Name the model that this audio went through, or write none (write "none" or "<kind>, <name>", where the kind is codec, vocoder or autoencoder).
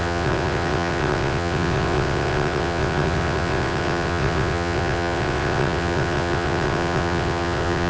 vocoder, WaveNeXt